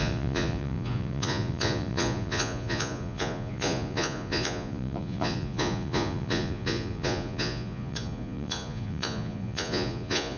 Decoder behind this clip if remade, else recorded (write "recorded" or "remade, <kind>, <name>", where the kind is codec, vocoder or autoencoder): remade, vocoder, Vocos